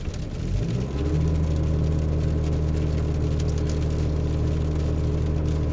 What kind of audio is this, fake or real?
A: real